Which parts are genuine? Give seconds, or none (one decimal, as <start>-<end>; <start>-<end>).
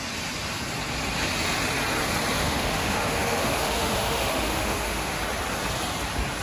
0.0-2.4; 5.2-6.4